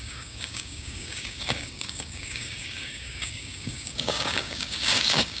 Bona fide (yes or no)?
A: no